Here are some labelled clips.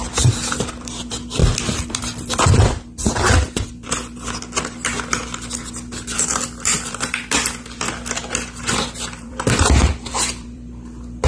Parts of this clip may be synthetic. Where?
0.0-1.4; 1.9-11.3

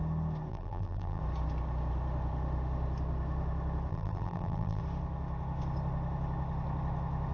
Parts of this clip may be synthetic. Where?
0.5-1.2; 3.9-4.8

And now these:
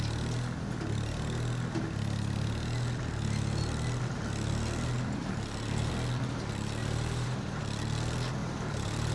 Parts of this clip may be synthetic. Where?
5.2-5.9; 6.8-7.6; 8.4-9.1

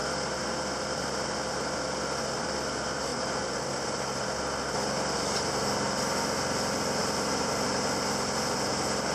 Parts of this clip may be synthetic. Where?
3.1-3.6; 7.0-8.0